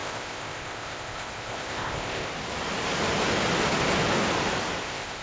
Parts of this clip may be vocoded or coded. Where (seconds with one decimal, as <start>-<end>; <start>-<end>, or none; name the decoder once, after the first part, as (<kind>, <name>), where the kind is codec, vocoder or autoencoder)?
0.0-2.3 (codec, ZipCodec); 4.8-5.2